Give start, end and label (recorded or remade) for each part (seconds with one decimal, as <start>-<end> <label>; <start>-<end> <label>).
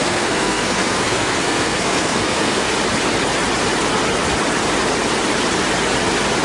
0.0-2.7 remade; 2.7-6.4 recorded